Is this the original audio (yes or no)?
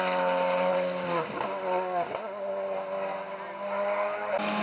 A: yes